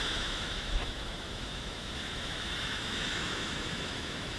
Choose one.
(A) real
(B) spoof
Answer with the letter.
B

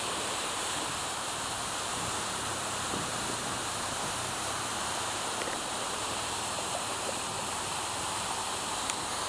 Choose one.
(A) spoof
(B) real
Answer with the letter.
A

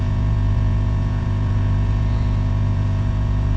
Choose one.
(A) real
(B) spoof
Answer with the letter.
B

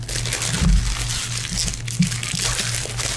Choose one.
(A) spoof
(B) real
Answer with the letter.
B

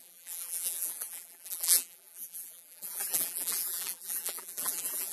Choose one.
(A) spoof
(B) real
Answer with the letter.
A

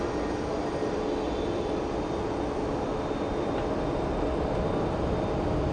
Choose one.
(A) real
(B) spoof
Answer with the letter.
A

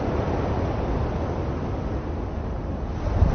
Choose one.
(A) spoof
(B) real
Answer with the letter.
B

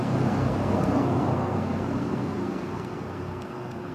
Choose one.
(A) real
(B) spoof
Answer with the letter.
B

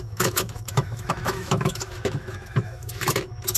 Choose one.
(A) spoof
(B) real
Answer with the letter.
A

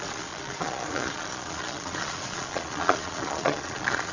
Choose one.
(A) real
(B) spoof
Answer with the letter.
B